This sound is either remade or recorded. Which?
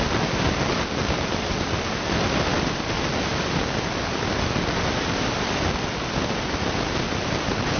recorded